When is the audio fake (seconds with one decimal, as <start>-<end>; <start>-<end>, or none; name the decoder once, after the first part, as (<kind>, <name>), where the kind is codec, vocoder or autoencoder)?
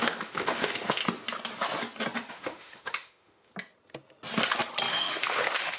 0.0-1.0 (autoencoder, DAC-VAE); 2.3-3.5; 4.9-5.8